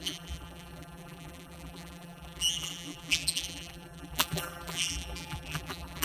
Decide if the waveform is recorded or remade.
remade